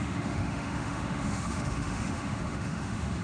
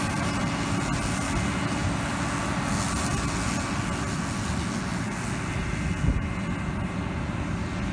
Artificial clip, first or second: first